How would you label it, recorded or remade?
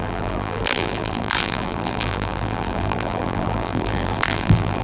remade